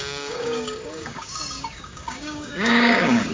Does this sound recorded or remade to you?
remade